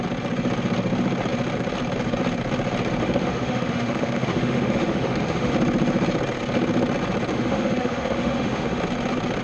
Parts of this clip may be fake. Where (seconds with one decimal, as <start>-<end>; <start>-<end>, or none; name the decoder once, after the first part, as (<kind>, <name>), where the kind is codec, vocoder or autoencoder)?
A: 3.0-5.5 (autoencoder, DAC-VAE); 7.3-8.8